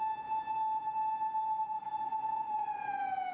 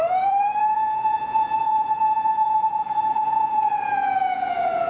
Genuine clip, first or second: first